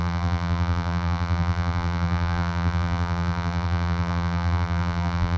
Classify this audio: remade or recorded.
remade